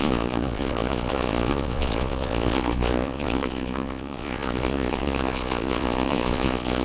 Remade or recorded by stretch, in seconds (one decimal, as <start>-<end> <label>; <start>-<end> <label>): 0.0-6.8 remade